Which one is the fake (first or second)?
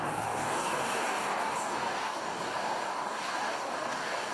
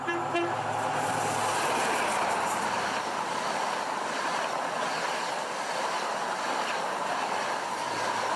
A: first